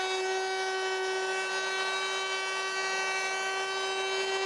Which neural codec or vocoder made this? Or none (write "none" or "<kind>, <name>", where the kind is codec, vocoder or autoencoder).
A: none